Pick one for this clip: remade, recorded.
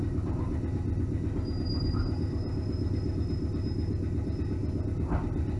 recorded